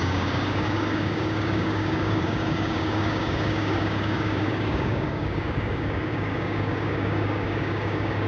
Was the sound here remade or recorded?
remade